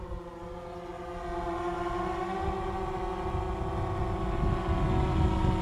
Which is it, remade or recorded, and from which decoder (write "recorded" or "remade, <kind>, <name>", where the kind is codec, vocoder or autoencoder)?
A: recorded